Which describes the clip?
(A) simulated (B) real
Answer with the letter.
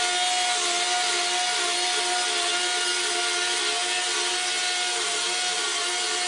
B